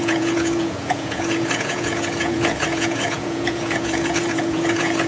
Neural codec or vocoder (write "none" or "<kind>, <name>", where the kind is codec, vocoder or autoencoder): vocoder, Vocos